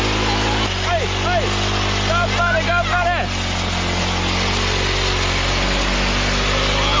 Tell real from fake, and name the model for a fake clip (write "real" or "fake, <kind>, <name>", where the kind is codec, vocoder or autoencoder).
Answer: real